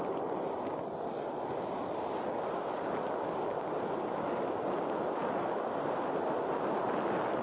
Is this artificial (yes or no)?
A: no